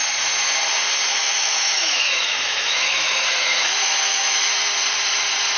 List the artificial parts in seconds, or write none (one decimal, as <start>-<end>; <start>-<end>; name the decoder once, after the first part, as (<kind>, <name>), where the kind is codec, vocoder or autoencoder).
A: 1.1-4.5 (autoencoder, DAC-VAE)